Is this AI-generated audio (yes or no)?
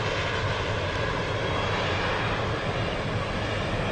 no